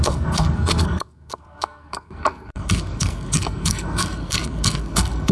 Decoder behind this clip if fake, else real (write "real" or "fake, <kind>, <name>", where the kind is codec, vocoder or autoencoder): fake, codec, SNAC